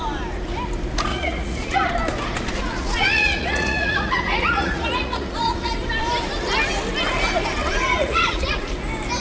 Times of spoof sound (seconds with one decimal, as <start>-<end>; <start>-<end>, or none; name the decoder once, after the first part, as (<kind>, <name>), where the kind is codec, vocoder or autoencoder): 1.1-1.9 (vocoder, Vocos); 2.6-5.7; 7.6-8.7

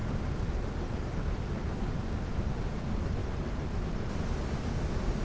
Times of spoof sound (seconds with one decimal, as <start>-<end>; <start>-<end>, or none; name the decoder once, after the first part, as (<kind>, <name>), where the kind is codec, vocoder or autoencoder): none

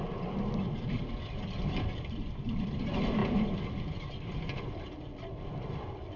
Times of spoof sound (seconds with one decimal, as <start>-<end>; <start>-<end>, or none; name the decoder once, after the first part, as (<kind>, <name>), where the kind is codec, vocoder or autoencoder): none

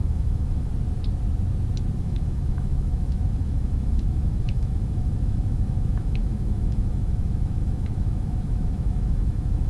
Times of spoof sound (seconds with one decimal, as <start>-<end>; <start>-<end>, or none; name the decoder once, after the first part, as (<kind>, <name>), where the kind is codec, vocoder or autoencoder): 0.0-0.7 (autoencoder, DAC-VAE); 2.0-9.7

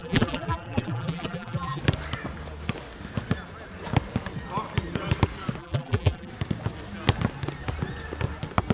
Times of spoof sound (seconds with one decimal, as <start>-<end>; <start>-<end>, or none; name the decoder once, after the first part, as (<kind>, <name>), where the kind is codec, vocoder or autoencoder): 0.0-1.8 (vocoder, BigVGAN v2); 5.6-6.3

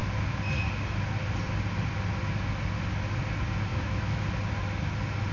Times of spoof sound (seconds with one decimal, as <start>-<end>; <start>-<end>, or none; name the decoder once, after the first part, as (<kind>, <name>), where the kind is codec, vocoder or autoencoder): 3.7-4.2 (autoencoder, DAC-VAE)